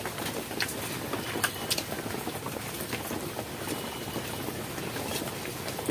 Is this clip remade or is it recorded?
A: recorded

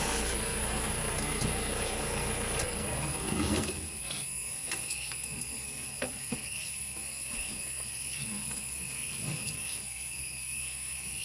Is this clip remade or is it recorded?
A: remade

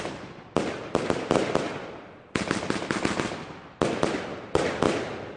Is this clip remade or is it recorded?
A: recorded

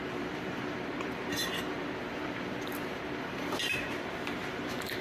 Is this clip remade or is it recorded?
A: remade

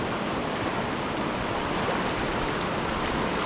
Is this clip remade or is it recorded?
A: recorded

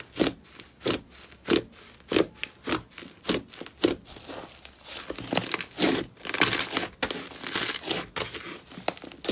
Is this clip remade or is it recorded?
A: recorded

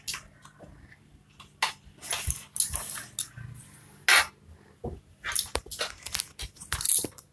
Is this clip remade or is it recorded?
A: recorded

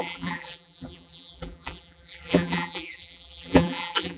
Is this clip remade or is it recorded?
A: remade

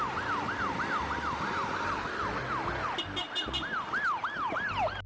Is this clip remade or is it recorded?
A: recorded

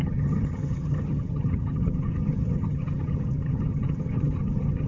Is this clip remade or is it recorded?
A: remade